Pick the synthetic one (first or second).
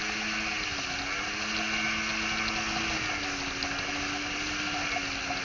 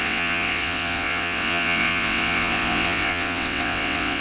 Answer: second